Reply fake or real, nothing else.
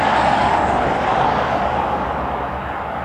fake